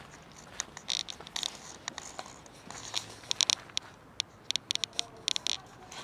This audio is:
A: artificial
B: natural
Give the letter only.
B